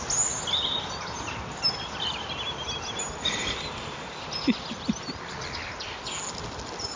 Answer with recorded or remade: recorded